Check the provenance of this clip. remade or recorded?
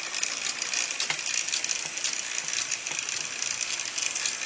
recorded